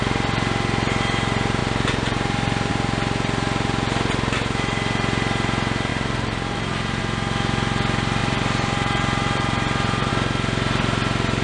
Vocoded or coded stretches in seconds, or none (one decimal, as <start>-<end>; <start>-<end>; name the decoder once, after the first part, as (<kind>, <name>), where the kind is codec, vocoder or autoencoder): 1.6-2.7 (vocoder, BigVGAN v2); 5.9-7.0; 8.2-10.1